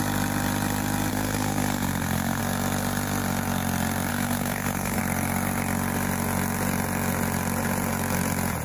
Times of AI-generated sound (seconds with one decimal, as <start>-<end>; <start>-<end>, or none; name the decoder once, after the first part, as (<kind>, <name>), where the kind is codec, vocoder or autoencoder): 1.1-2.4 (codec, SNAC); 4.1-5.0